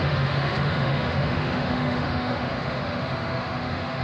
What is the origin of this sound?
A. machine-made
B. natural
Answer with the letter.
A